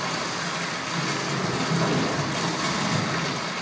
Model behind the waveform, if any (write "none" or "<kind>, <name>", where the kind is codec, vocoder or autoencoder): none